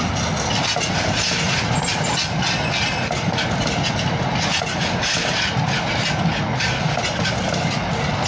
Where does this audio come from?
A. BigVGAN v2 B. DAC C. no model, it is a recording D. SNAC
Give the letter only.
C